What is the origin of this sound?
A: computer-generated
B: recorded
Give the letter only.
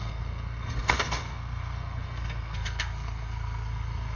A